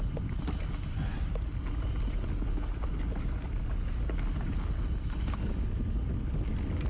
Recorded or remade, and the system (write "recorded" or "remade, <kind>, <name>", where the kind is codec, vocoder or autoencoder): recorded